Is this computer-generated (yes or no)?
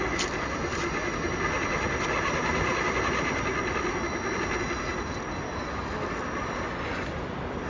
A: no